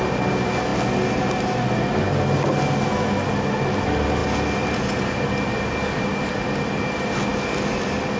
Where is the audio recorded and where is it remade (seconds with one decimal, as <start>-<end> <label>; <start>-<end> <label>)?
0.0-8.2 recorded

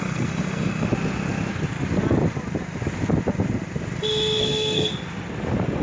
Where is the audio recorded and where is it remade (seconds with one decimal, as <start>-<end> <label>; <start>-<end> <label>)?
0.0-0.9 remade; 0.9-4.4 recorded; 4.4-4.9 remade; 4.9-5.8 recorded

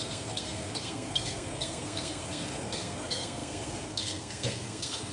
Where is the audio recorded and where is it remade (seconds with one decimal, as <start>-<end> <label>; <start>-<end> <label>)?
0.0-5.1 remade